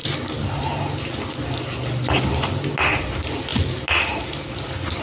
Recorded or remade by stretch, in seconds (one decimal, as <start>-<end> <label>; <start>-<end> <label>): 0.0-5.0 recorded